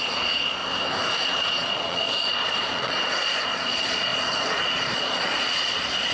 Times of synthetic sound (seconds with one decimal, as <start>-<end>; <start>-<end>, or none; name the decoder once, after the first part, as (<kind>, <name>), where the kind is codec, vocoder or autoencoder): 0.0-0.6 (vocoder, Vocos); 1.3-6.1